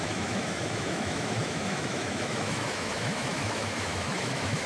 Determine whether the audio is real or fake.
fake